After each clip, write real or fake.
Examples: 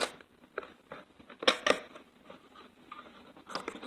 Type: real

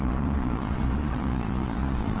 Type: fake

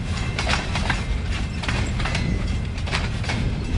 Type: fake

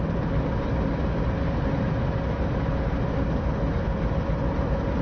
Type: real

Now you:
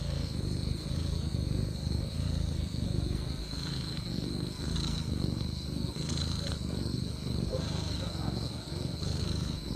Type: fake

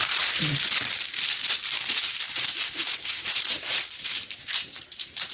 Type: fake